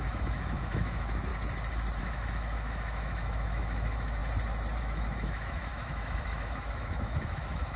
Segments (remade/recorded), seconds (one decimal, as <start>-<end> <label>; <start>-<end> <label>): 0.0-1.3 remade; 1.3-2.0 recorded; 2.0-4.2 remade; 4.2-4.8 recorded; 4.8-7.8 remade